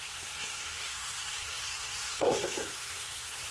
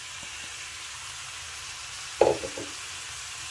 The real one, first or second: second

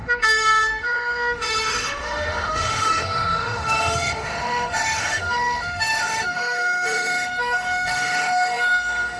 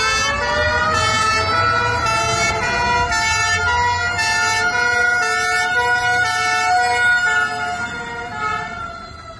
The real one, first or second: second